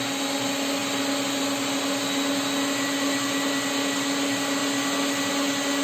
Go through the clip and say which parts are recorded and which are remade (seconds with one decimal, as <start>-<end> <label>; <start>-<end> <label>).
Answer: 0.0-5.8 recorded